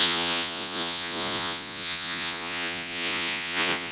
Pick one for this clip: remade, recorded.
remade